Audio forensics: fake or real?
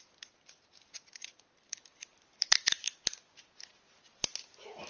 real